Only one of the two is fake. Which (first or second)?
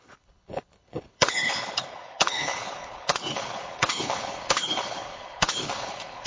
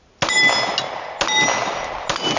first